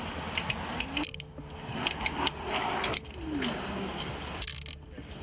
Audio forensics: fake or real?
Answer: real